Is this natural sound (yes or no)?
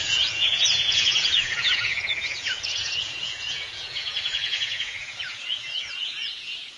no